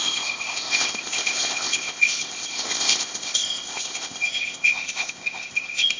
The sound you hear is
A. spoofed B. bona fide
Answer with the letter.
A